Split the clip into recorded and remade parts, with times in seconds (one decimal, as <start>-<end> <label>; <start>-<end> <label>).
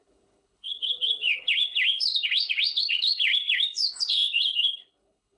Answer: 0.0-5.4 remade